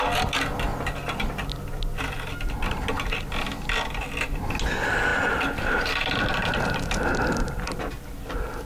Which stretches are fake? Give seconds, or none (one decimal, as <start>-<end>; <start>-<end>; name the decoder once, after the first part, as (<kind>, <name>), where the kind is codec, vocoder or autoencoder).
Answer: 0.7-1.3 (vocoder, BigVGAN v2); 5.1-7.8